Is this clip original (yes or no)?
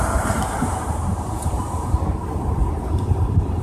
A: no